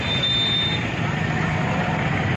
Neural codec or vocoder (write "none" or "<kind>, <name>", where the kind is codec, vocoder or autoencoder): none